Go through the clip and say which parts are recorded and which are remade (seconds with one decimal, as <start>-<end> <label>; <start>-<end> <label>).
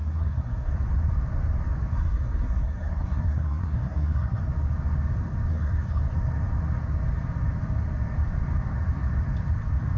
0.0-0.7 remade; 0.7-1.9 recorded; 1.9-4.4 remade; 4.4-5.5 recorded; 5.5-6.0 remade; 6.0-10.0 recorded